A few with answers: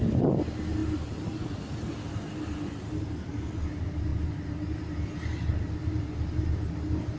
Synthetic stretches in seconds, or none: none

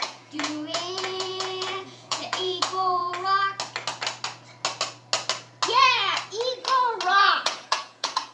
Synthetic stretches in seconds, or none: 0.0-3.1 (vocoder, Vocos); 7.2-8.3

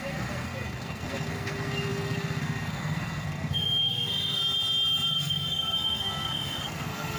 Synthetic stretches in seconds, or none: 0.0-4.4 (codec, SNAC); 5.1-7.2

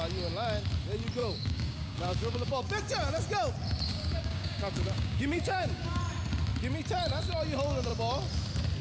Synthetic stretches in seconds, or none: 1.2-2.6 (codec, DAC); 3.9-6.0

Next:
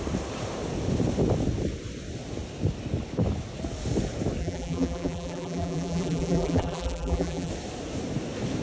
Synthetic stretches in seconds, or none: 4.4-7.5 (vocoder, BigVGAN v2)

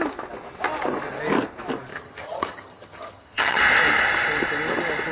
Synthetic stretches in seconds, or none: 1.9-3.6 (vocoder, HiFi-GAN)